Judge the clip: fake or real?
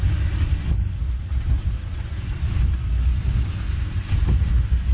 real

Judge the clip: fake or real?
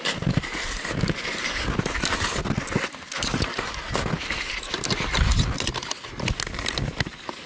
real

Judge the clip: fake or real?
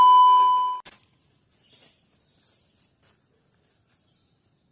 real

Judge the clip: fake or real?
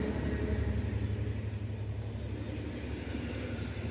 real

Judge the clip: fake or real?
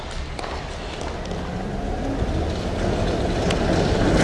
real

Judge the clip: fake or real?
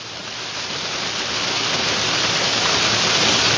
real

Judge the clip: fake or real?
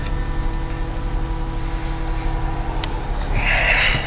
real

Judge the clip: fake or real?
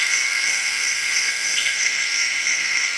fake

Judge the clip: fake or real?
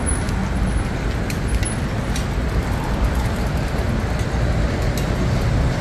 real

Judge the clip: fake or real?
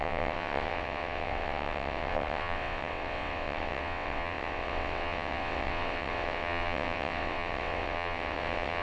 fake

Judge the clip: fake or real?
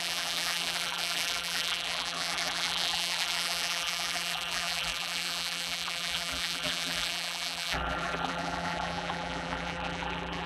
fake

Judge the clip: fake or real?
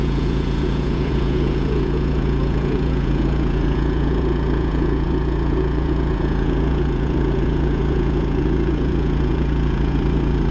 fake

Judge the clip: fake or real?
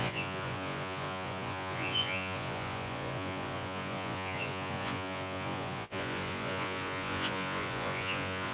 fake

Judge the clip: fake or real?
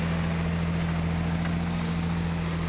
real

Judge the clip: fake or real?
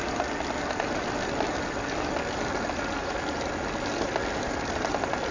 real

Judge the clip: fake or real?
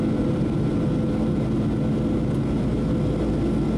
real